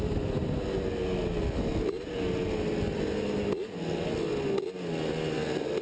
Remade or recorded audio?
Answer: recorded